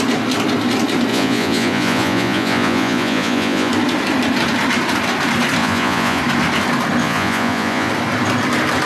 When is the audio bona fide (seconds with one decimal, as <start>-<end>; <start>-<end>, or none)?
0.0-1.1; 3.7-5.6; 6.2-7.0; 7.9-8.9